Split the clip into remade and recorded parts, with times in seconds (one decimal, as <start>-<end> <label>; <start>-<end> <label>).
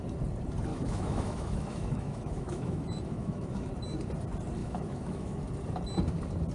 0.0-0.7 recorded; 0.7-3.7 remade; 3.7-4.6 recorded; 4.6-5.4 remade; 5.4-6.5 recorded